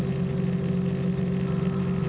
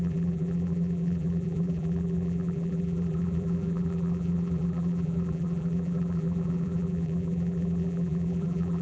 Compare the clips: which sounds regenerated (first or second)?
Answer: second